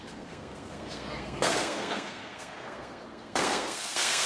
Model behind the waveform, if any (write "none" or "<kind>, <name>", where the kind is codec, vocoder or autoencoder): codec, SNAC